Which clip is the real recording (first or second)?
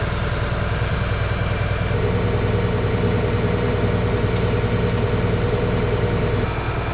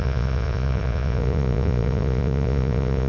first